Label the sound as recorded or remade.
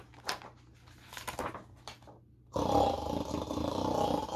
recorded